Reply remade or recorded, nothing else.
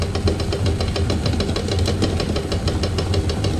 recorded